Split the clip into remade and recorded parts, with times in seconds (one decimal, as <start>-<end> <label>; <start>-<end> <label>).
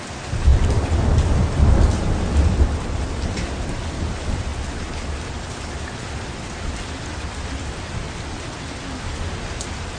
0.0-0.5 recorded; 0.5-3.9 remade; 3.9-10.0 recorded